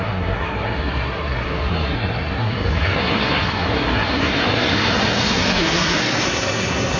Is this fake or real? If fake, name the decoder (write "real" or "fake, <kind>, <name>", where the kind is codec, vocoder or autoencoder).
fake, codec, SNAC